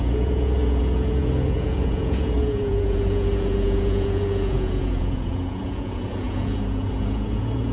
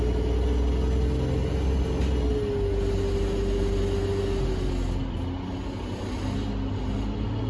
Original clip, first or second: second